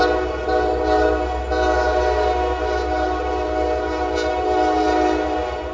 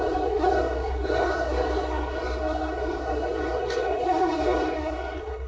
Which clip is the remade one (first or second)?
second